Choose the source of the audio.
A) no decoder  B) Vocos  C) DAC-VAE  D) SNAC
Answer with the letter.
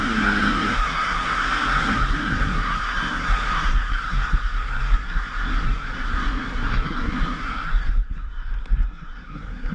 D